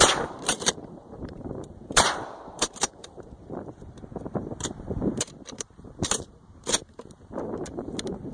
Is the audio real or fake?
fake